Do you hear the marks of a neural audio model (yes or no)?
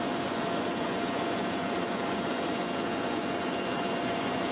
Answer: yes